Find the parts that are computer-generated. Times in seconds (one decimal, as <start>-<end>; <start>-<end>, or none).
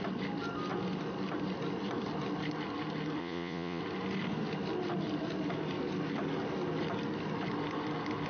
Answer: 3.2-3.8